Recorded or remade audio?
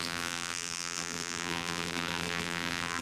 remade